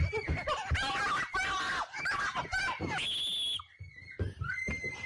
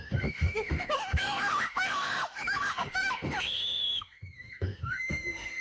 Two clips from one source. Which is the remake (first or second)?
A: second